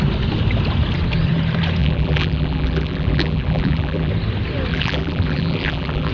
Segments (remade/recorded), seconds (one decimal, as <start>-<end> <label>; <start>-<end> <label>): 0.0-1.8 recorded; 1.8-4.1 remade; 4.1-4.7 recorded; 4.7-6.1 remade